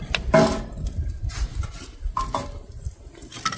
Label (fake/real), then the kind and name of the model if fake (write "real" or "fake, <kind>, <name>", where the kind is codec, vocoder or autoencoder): fake, vocoder, BigVGAN v2